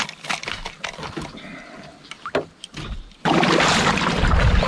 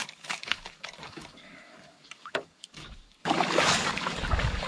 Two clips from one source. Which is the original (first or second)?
first